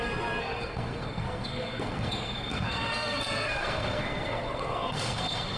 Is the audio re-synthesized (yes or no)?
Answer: yes